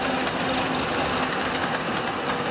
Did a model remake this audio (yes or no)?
no